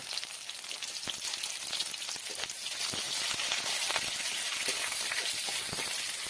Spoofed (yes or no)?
no